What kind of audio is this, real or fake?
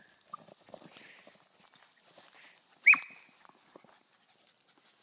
real